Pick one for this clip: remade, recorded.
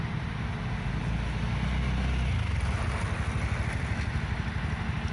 recorded